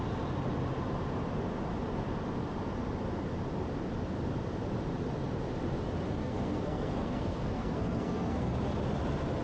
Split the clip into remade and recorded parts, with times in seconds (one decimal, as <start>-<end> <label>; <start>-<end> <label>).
0.0-6.2 recorded; 6.2-8.5 remade; 8.5-9.4 recorded